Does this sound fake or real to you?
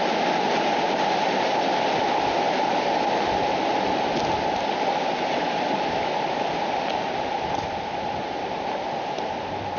real